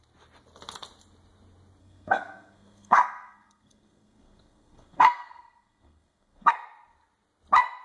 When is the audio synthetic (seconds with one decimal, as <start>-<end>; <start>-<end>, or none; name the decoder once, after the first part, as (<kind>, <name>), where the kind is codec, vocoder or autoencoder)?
1.8-6.5 (codec, SNAC)